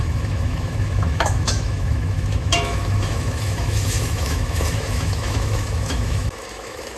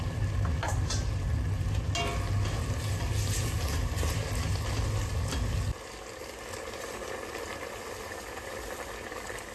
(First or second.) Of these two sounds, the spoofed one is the first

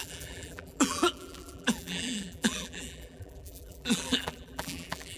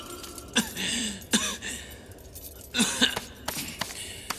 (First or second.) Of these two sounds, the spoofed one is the first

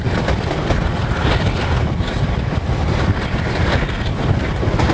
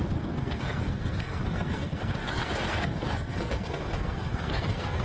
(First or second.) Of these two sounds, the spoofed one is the second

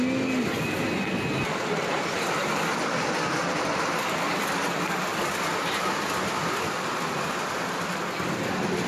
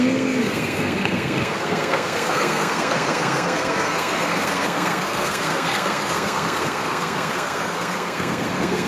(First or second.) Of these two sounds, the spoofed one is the second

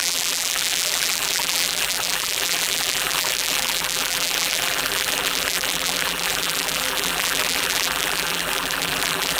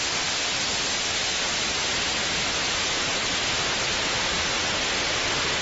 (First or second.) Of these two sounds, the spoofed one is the first